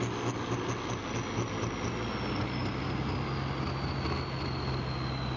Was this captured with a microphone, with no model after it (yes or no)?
yes